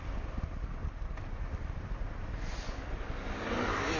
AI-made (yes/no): no